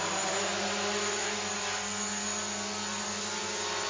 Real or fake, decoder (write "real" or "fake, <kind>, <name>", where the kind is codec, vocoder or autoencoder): real